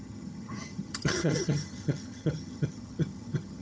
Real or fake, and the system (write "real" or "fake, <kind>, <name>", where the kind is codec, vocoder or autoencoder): fake, vocoder, HiFi-GAN